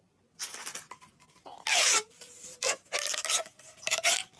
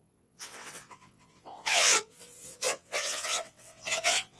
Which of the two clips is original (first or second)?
first